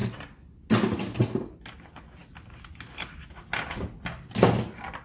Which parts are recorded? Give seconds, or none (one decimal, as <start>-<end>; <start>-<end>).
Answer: 0.0-5.0